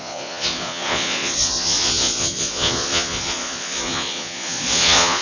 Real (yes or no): no